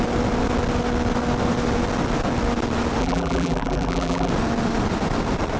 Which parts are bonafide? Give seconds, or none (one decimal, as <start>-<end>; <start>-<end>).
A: 0.0-3.0; 4.3-5.6